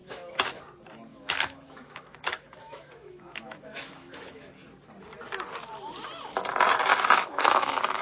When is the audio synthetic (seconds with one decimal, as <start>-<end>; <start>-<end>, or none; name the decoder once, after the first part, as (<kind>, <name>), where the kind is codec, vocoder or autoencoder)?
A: 0.0-0.6 (autoencoder, DAC-VAE); 1.1-4.5; 6.9-8.0